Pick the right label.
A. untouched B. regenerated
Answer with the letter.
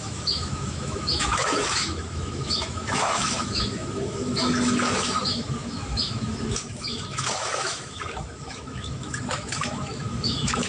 B